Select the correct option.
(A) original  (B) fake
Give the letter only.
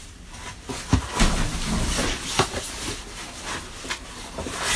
B